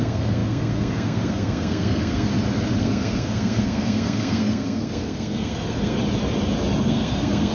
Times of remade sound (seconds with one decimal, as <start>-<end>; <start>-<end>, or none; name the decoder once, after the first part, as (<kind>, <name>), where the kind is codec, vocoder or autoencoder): 0.0-2.3 (codec, SNAC); 2.8-6.0; 6.8-7.5